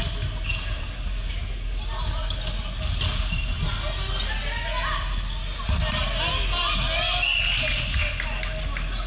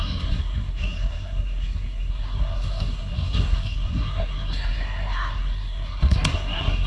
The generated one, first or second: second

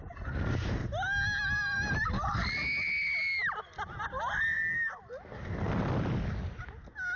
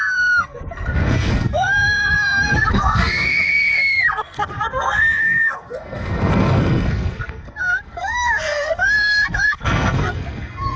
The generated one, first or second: second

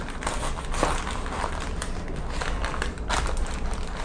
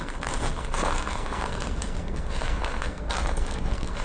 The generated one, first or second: second